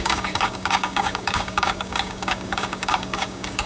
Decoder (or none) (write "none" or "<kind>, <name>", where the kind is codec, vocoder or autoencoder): codec, DAC